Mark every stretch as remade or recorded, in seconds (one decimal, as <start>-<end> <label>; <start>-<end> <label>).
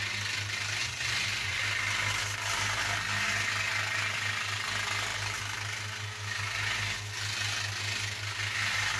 0.0-0.8 recorded; 0.8-1.6 remade; 1.6-9.0 recorded